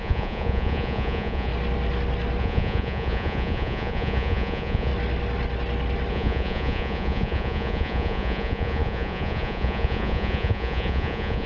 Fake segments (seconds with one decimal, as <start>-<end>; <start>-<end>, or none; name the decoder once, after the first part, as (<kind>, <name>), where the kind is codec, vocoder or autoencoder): 0.0-1.5 (vocoder, Vocos); 2.4-4.9; 6.1-11.5

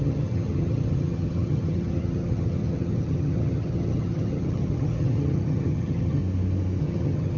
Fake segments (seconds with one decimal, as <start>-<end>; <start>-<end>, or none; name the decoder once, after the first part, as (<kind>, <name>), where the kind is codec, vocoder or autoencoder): 0.0-6.2 (vocoder, HiFi-GAN); 6.8-7.4

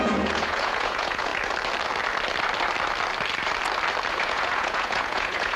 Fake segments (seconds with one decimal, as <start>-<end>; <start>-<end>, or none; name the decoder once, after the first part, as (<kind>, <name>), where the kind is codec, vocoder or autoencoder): 0.0-1.3 (vocoder, Vocos); 4.1-5.6

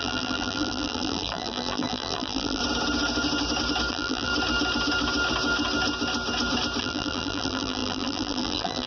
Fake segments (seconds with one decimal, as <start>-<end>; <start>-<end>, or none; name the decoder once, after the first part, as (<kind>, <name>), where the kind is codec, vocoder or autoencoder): 0.0-2.6 (vocoder, BigVGAN v2); 3.9-4.3; 6.8-8.9

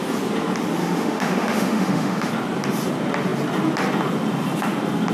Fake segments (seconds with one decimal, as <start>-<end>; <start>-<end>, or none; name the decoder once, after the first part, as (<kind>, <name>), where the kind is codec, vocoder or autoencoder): 0.8-2.3 (autoencoder, DAC-VAE)

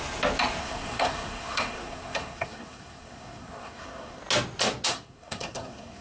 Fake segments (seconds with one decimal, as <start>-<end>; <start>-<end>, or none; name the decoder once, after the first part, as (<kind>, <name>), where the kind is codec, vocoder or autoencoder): 0.6-4.2 (codec, SNAC); 4.9-6.0

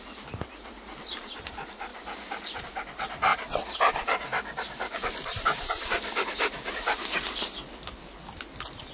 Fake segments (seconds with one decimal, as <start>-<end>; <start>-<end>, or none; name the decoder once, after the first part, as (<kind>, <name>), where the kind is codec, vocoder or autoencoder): 1.9-2.6 (vocoder, BigVGAN v2); 3.3-6.7

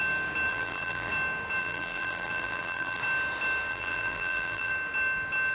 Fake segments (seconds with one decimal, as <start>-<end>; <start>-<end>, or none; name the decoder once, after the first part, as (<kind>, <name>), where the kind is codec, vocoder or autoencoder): 0.5-1.1 (vocoder, BigVGAN v2); 1.6-3.0; 3.7-4.7